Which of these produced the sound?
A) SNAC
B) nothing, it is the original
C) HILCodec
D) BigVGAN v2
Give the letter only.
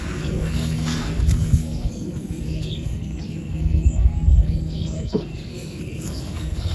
A